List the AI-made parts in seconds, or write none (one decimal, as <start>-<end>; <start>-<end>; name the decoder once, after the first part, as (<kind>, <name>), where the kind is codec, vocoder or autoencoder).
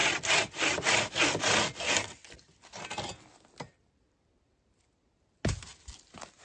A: none